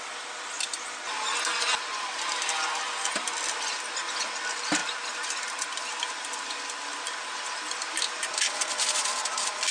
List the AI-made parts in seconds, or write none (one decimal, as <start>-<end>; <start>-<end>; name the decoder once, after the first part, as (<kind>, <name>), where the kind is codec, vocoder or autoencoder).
none